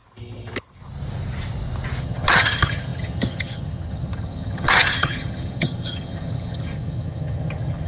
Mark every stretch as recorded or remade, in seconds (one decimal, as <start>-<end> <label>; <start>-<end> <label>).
0.0-2.0 recorded; 2.0-7.9 remade